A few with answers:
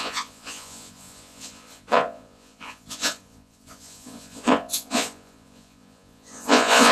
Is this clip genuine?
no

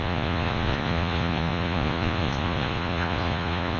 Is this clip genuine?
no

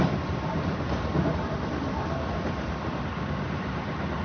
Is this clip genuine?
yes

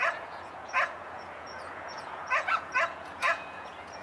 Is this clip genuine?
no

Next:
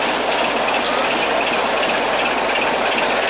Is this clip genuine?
yes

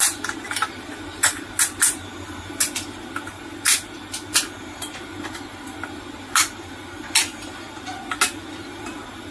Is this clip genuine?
yes